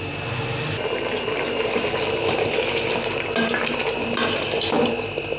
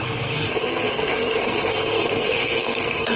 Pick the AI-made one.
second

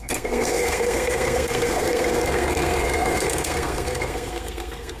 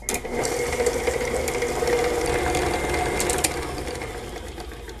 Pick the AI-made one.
first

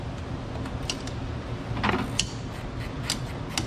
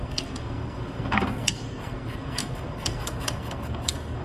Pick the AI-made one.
second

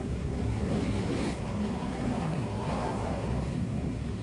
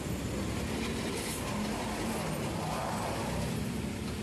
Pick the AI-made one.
first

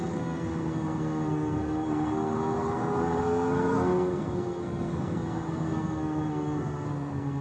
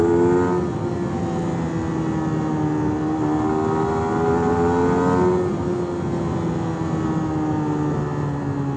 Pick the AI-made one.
first